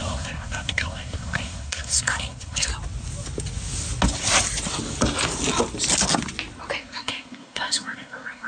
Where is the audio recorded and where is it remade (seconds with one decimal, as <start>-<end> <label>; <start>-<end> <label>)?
0.0-2.7 remade; 2.7-6.8 recorded; 6.8-8.5 remade